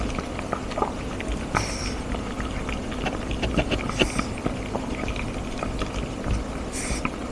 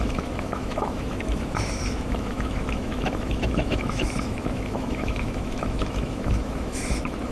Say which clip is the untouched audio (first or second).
first